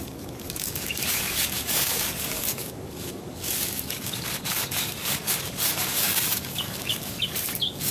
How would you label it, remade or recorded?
remade